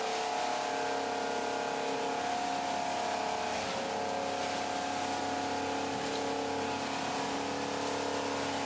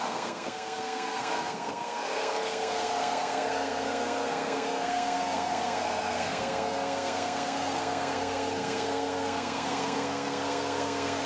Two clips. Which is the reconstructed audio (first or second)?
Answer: second